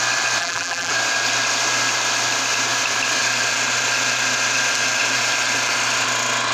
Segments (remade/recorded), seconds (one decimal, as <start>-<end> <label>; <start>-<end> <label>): 0.0-0.4 recorded; 0.4-0.9 remade; 0.9-6.5 recorded